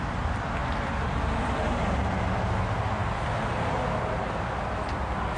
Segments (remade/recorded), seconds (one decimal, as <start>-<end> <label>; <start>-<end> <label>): 0.0-5.4 recorded